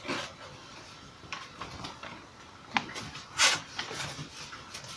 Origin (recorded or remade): recorded